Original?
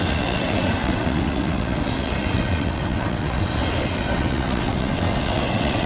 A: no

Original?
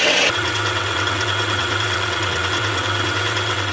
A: no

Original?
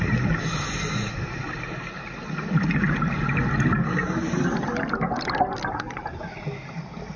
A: yes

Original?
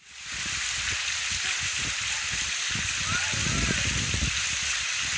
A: yes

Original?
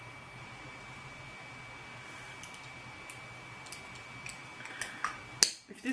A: yes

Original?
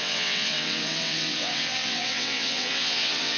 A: no